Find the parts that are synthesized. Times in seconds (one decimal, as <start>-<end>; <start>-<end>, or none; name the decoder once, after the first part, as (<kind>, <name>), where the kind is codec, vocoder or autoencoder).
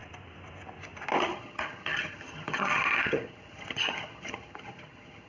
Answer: 1.2-5.3 (vocoder, HiFi-GAN)